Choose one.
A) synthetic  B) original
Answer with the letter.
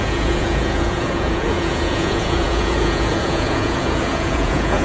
A